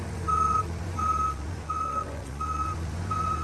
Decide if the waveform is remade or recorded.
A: remade